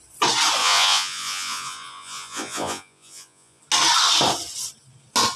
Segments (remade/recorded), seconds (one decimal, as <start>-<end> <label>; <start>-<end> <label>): 0.0-0.6 recorded; 0.6-3.6 remade; 3.6-5.4 recorded